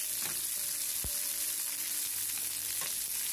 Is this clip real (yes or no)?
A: yes